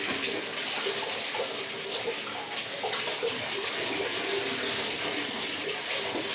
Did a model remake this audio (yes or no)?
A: no